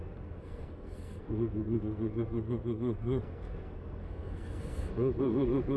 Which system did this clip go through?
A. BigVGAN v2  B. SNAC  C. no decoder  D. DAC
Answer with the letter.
B